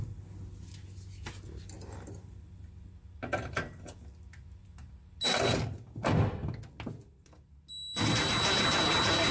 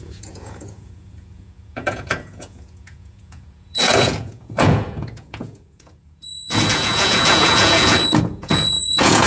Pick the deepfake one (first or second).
second